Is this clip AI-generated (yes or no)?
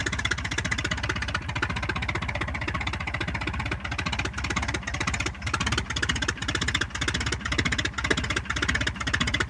no